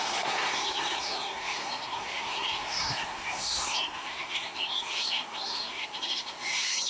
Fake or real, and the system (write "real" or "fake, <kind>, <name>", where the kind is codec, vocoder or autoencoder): fake, codec, SNAC